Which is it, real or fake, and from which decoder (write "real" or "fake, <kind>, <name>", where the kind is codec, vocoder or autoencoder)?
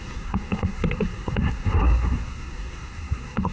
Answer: fake, codec, SNAC